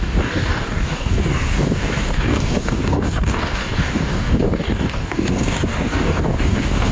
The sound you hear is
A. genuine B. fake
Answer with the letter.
B